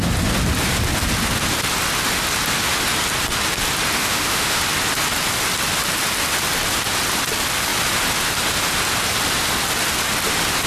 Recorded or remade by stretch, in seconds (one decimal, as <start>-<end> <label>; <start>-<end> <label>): 0.0-4.0 recorded; 4.0-4.6 remade; 4.6-10.7 recorded